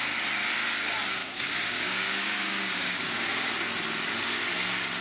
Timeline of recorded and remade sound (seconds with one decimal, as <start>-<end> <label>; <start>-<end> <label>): 0.0-1.2 recorded; 1.2-3.5 remade; 3.5-5.0 recorded